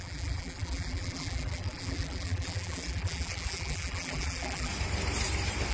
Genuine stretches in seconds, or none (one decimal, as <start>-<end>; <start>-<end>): 4.7-5.7